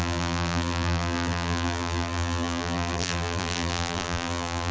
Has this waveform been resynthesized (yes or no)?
yes